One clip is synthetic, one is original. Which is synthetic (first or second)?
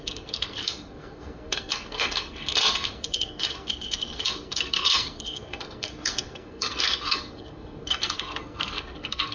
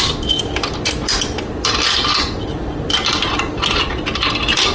first